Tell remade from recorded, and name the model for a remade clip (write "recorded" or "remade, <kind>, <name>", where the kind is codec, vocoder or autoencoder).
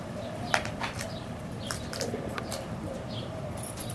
remade, vocoder, BigVGAN v2